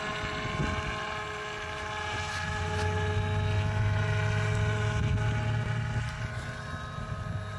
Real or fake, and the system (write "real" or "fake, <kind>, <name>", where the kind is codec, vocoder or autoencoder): real